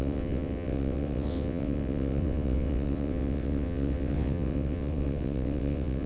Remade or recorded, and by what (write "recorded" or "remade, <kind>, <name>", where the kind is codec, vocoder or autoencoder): remade, vocoder, WaveNeXt